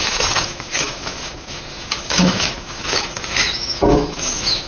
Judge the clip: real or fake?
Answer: fake